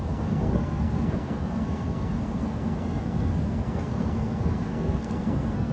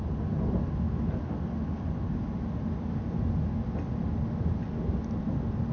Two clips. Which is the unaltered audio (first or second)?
second